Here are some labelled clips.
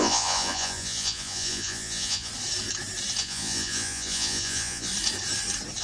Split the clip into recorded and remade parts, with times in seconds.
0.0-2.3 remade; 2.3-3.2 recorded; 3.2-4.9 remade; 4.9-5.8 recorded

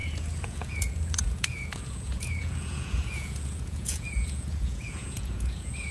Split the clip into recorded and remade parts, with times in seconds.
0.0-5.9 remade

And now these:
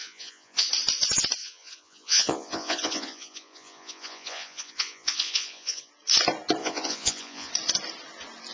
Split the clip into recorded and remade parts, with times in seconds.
0.0-0.7 remade; 0.7-1.4 recorded; 1.4-5.9 remade; 5.9-6.6 recorded; 6.6-7.5 remade; 7.5-8.5 recorded

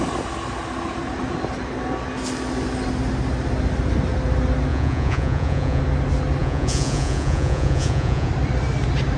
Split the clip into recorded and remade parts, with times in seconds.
0.0-4.7 recorded; 4.7-5.8 remade; 5.8-6.4 recorded; 6.4-8.3 remade; 8.3-9.2 recorded